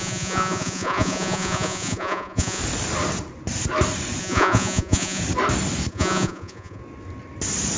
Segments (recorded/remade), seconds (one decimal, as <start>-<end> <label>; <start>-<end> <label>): 0.0-2.6 remade; 2.6-4.2 recorded; 4.2-5.2 remade; 5.2-5.9 recorded; 5.9-6.8 remade; 6.8-7.8 recorded